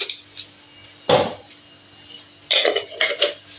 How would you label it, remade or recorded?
recorded